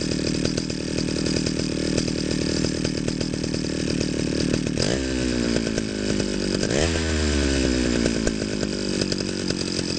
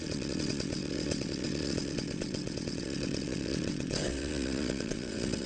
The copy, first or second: second